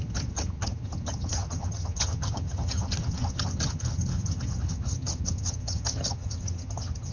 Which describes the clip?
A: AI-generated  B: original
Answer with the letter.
A